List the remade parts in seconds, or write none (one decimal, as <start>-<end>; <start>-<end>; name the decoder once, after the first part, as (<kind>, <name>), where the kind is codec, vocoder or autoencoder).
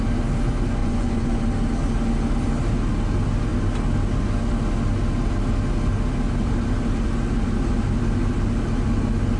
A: 0.8-1.4 (vocoder, Vocos)